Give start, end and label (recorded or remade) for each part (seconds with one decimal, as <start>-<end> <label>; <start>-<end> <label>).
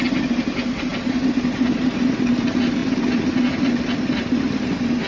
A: 0.0-5.1 recorded